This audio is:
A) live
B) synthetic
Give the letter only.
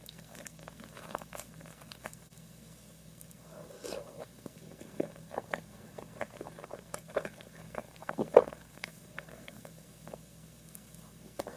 B